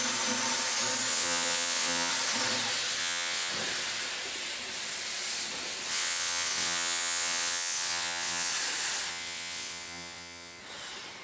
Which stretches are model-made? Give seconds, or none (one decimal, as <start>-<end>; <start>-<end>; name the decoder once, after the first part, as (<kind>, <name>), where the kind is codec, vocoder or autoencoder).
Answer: 1.1-2.1 (vocoder, WaveNeXt); 3.0-3.5; 5.9-8.5; 9.1-10.6